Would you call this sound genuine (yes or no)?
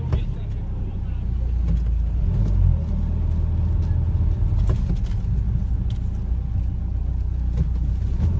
yes